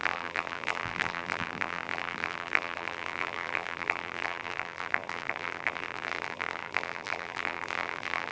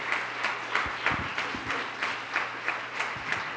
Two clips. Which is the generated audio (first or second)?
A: first